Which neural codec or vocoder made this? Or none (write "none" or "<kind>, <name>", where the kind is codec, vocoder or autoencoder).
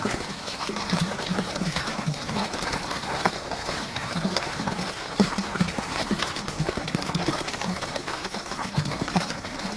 codec, SNAC